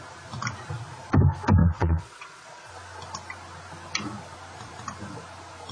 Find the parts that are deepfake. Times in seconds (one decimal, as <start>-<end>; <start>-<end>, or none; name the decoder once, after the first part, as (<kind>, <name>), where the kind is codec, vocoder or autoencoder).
1.6-2.7 (vocoder, Vocos)